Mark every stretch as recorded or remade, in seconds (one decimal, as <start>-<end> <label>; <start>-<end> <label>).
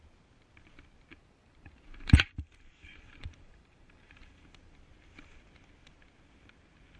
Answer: 0.0-1.1 recorded; 1.1-4.5 remade; 4.5-7.0 recorded